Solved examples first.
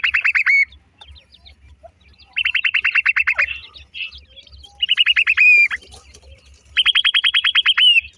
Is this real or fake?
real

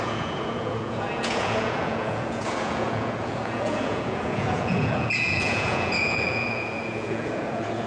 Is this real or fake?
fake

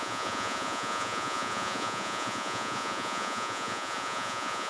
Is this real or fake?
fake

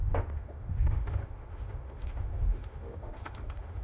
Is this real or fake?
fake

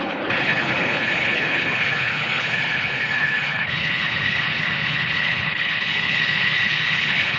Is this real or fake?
fake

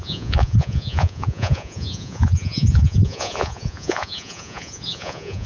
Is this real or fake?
fake